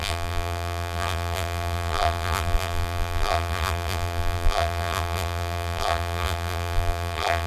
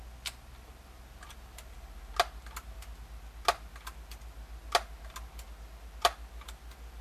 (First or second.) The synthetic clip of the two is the first